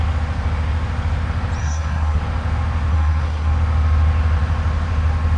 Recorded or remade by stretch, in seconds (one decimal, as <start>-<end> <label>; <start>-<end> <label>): 0.0-1.6 recorded; 1.6-2.2 remade; 2.2-2.9 recorded; 2.9-3.5 remade; 3.5-5.4 recorded